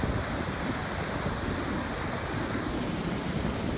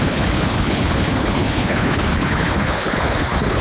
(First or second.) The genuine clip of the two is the first